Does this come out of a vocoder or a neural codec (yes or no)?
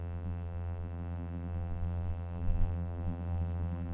yes